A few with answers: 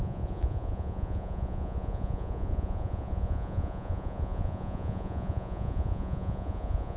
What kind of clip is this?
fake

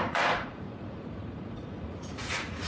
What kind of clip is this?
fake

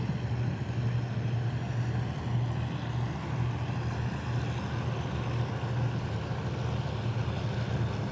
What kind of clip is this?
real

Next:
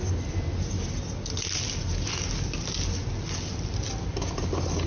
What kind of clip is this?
real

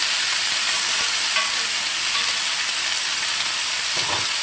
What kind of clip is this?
fake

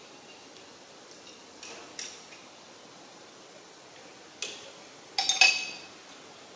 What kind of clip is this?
real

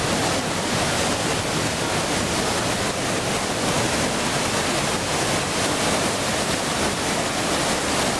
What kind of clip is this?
real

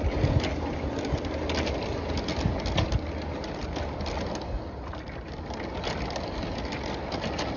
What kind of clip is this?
real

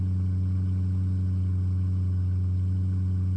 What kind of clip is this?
real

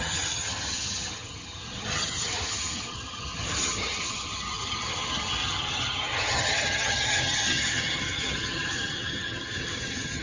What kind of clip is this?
fake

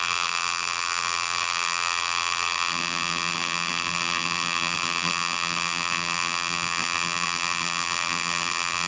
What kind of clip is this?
fake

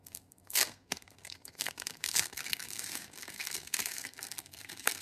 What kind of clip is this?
fake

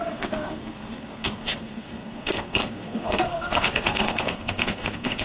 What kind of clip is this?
fake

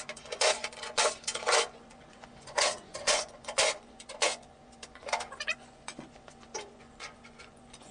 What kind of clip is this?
fake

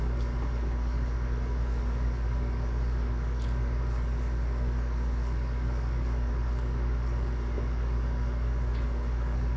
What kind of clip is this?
fake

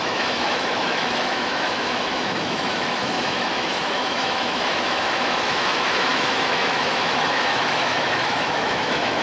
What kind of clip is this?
fake